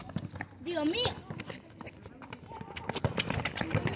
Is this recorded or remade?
recorded